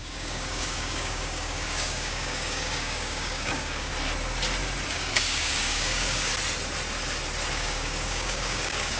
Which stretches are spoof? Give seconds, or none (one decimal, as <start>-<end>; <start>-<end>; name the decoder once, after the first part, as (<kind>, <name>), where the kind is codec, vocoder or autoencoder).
0.0-3.9 (codec, DAC); 4.9-6.3; 7.5-9.0